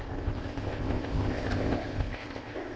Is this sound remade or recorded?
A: remade